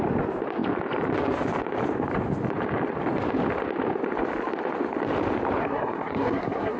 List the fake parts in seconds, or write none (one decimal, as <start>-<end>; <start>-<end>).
5.6-6.8